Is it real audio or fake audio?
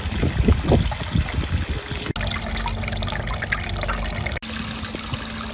real